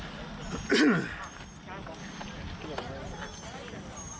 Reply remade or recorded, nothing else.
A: recorded